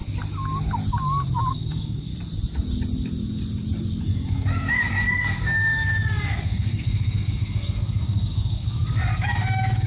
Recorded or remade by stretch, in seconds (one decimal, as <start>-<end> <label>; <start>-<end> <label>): 0.0-1.5 recorded; 1.5-2.1 remade; 2.1-4.0 recorded; 4.0-9.9 remade